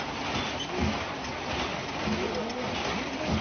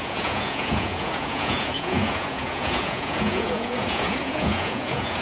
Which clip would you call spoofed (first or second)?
second